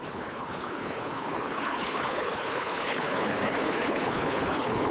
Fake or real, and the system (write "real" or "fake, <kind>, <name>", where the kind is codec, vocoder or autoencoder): fake, codec, HILCodec